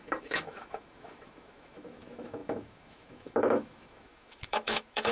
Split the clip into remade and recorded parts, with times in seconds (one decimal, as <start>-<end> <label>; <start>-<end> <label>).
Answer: 0.0-5.1 remade